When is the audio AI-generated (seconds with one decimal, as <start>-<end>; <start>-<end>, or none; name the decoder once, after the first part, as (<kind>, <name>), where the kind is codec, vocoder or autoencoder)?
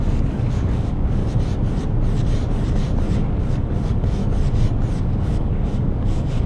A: 0.0-1.2 (codec, DAC); 3.4-4.2; 5.0-6.5